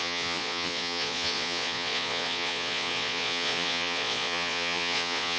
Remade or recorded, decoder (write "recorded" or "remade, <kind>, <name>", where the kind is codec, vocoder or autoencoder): remade, vocoder, Vocos